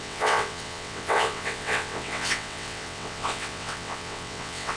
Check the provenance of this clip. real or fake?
fake